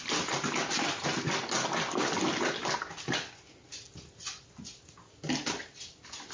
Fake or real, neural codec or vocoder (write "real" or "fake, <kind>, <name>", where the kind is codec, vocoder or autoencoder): real